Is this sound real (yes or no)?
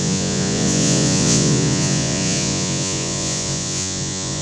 no